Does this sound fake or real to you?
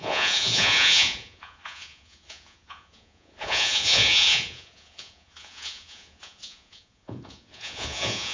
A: fake